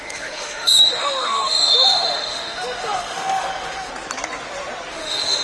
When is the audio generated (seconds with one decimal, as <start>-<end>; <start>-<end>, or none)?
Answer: 0.0-3.9; 4.9-5.4